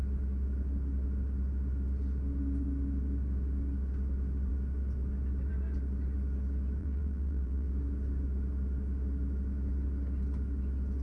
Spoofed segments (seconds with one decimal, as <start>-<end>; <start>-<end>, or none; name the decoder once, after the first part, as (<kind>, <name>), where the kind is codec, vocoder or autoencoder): 6.8-7.7 (vocoder, BigVGAN v2)